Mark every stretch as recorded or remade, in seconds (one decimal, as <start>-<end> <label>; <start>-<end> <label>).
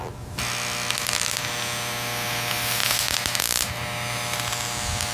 0.0-5.1 recorded